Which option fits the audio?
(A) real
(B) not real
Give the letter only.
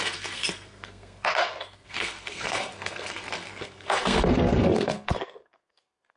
B